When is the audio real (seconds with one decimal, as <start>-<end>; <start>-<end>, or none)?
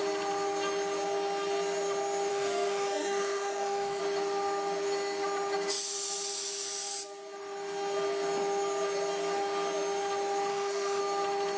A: 0.0-2.3; 4.0-10.5; 11.0-11.6